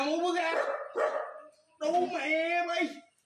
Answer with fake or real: real